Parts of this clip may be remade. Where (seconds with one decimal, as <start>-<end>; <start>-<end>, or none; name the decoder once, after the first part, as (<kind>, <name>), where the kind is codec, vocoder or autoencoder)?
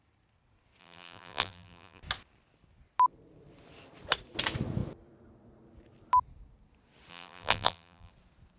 0.8-2.0 (vocoder, BigVGAN v2); 7.1-8.1